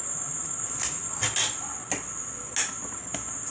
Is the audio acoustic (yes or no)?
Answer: yes